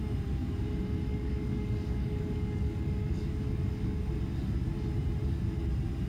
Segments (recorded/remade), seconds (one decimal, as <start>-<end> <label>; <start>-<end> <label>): 0.0-1.1 recorded; 1.1-4.1 remade; 4.1-6.1 recorded

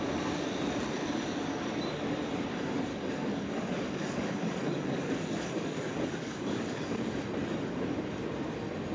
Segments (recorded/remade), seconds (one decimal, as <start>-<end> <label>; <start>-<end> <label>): 0.0-2.9 recorded; 2.9-7.2 remade; 7.2-8.9 recorded

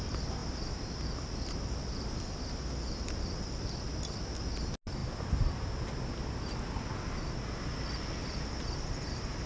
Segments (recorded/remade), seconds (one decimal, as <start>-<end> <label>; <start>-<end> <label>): 0.0-9.5 recorded

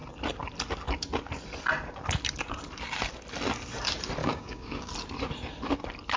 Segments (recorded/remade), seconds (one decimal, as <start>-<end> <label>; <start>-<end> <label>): 0.0-4.2 recorded; 4.2-4.9 remade; 4.9-6.2 recorded